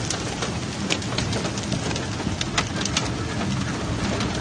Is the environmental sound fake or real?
real